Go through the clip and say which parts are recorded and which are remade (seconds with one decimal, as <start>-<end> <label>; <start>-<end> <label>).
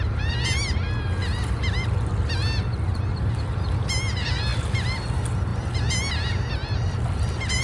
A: 0.0-7.6 recorded